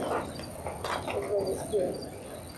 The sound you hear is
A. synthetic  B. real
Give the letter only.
B